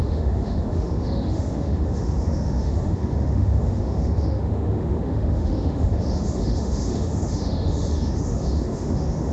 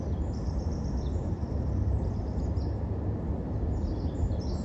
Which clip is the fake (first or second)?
first